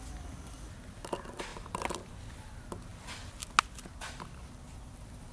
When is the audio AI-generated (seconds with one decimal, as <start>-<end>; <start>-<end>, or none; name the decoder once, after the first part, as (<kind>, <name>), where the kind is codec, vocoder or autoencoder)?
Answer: 1.5-2.3 (vocoder, BigVGAN v2)